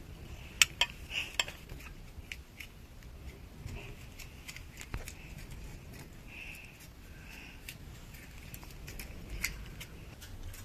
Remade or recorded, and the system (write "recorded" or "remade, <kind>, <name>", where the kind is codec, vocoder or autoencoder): recorded